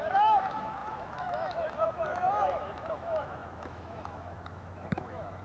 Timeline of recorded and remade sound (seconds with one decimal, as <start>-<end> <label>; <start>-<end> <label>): 0.0-5.4 remade